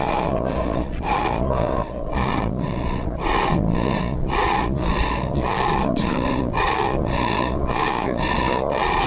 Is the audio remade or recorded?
remade